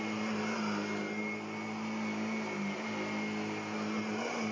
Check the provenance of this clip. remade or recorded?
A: recorded